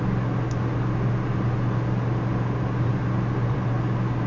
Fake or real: real